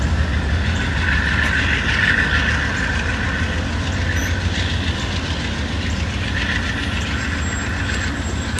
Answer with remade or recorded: recorded